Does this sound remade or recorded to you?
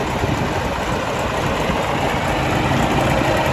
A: recorded